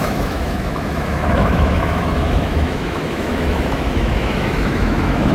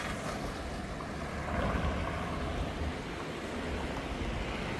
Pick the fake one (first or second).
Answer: first